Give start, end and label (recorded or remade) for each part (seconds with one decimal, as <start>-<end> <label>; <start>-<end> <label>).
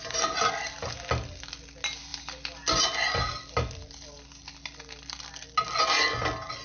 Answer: 0.0-6.6 recorded